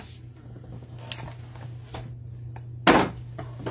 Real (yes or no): yes